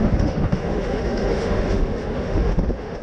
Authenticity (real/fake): fake